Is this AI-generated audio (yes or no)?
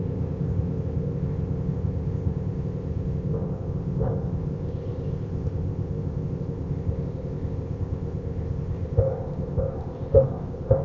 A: yes